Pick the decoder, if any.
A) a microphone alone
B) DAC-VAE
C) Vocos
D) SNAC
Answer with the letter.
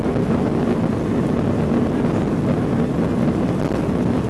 A